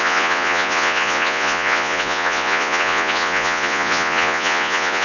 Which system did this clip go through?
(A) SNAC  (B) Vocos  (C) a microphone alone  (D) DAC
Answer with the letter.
B